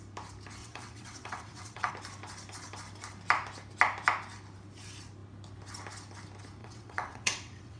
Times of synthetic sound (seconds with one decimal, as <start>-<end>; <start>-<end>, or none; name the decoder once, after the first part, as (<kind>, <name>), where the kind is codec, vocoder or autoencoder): 0.6-1.9 (vocoder, WaveNeXt); 6.6-7.8